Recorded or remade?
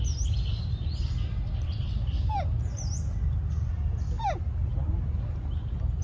recorded